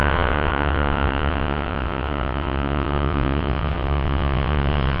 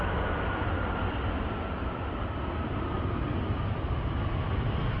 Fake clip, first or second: first